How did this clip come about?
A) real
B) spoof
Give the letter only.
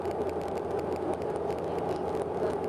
A